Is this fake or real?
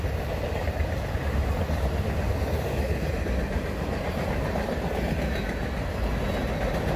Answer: real